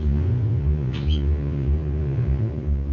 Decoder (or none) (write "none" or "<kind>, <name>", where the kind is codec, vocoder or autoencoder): vocoder, Vocos